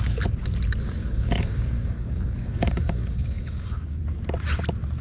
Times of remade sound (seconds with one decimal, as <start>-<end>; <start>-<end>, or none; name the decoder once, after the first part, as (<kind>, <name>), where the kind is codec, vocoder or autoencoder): 1.0-4.0 (codec, DAC)